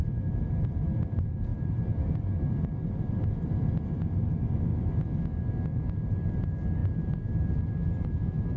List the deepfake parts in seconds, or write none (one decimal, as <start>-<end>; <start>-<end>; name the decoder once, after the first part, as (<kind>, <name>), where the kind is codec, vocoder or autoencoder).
0.0-4.7 (vocoder, BigVGAN v2); 5.7-8.6